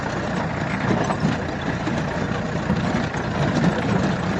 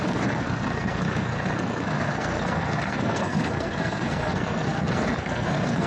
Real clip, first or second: first